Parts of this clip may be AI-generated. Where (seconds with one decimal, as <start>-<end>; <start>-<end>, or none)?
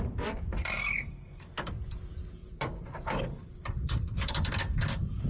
2.4-4.3